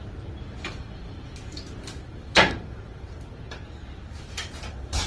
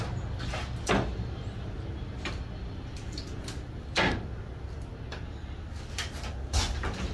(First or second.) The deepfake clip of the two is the first